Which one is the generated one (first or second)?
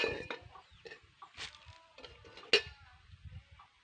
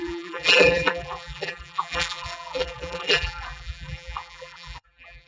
second